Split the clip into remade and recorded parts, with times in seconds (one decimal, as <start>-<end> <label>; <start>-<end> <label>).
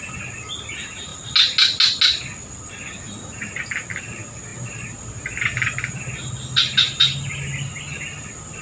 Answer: 0.0-8.6 recorded